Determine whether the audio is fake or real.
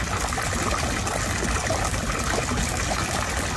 real